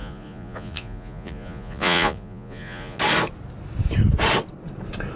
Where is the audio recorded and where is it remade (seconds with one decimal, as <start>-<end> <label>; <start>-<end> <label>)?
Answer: 0.0-3.0 remade; 3.0-5.2 recorded